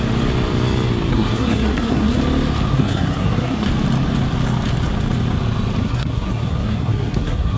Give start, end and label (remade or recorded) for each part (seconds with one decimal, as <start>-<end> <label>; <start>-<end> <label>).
0.0-1.1 recorded; 1.1-2.2 remade; 2.2-2.7 recorded; 2.7-3.7 remade; 3.7-5.8 recorded; 5.8-7.6 remade

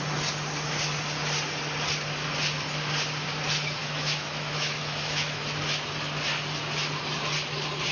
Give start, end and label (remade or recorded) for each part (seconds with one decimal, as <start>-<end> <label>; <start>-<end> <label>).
0.0-3.8 recorded; 3.8-5.4 remade; 5.4-7.9 recorded